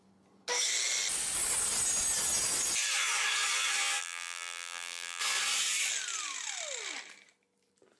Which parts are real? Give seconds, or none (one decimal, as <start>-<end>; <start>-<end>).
0.0-4.0; 5.2-8.0